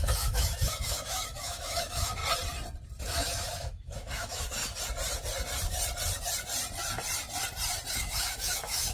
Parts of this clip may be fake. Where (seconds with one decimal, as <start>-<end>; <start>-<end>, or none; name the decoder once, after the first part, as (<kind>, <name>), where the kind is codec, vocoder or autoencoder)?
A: 0.0-2.2 (autoencoder, DAC-VAE); 3.0-4.6; 7.9-8.9